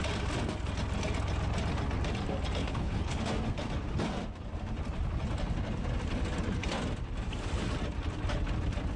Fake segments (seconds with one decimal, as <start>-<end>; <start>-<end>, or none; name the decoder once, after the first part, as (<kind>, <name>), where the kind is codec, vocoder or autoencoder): 2.6-3.2 (codec, HILCodec)